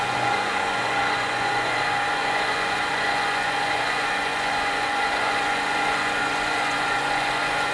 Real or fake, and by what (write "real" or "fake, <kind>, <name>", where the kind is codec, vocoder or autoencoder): fake, vocoder, Vocos